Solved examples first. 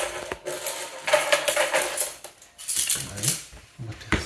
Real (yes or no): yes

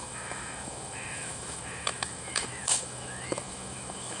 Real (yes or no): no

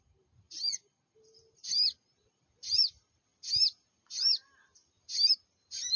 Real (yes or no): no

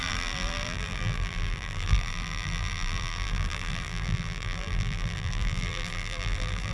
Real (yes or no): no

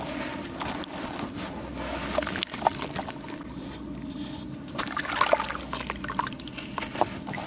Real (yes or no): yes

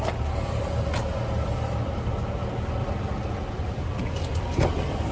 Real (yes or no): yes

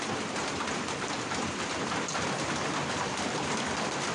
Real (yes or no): no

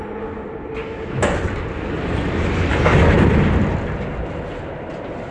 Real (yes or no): yes